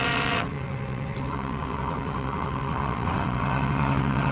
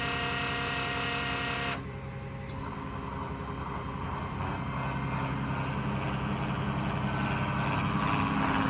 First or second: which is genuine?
second